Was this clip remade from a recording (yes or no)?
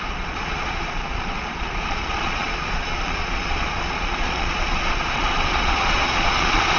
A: yes